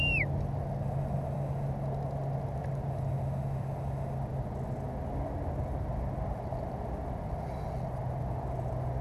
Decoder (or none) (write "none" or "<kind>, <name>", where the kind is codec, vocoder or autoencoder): none